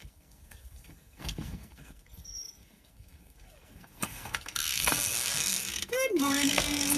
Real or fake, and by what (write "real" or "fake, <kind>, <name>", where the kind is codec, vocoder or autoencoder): fake, codec, SNAC